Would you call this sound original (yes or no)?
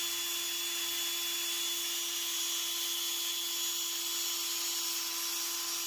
yes